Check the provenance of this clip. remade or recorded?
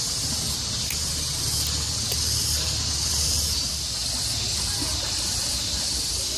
recorded